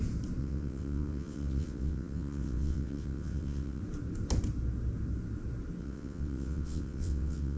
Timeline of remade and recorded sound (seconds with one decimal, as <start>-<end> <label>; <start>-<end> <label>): 0.0-0.4 recorded; 0.4-3.8 remade; 3.8-5.8 recorded; 5.8-7.6 remade